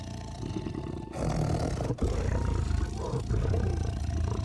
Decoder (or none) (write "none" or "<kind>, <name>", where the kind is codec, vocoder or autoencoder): none